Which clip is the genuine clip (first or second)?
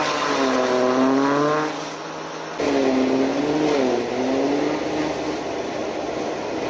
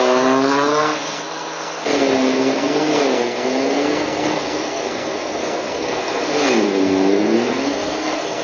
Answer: first